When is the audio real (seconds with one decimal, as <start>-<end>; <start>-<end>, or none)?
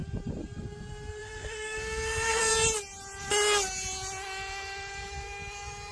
0.0-1.2; 2.5-5.9